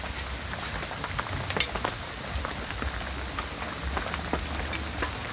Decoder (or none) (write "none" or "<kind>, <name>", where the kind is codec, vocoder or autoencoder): none